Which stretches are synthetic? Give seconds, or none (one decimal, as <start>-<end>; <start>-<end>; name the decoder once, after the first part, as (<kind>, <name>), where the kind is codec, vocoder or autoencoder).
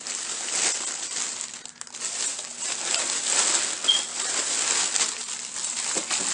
none